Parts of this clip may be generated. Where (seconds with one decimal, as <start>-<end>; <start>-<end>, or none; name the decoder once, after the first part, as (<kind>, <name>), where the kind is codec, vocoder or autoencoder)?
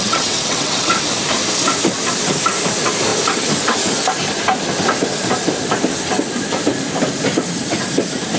0.0-0.9 (vocoder, WaveNeXt)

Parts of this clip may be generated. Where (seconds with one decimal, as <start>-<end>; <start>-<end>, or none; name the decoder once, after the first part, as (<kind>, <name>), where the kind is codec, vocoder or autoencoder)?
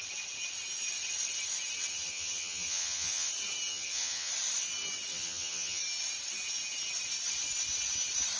1.9-3.3 (vocoder, HiFi-GAN); 3.7-4.3; 5.1-5.8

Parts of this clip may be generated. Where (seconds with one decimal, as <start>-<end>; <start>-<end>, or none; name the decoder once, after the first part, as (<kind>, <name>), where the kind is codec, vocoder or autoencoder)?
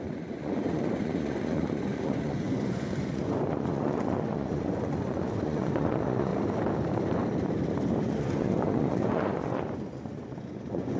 0.0-6.3 (vocoder, Vocos); 8.0-11.0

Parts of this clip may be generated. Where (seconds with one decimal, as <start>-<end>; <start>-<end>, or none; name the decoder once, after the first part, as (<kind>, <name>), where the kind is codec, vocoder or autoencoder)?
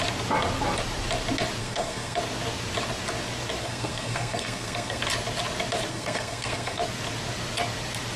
1.6-2.2 (codec, SNAC); 3.6-5.0; 5.9-6.8